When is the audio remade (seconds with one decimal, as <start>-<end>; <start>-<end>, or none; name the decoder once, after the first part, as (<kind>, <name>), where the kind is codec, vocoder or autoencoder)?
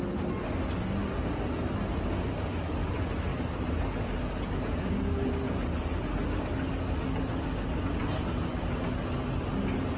none